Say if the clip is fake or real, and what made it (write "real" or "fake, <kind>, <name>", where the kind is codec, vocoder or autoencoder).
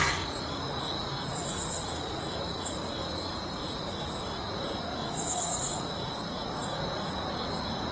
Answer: fake, vocoder, Vocos